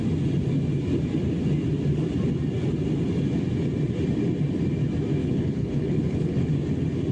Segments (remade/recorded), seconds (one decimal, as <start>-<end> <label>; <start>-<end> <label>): 0.0-5.2 recorded; 5.2-6.5 remade; 6.5-7.1 recorded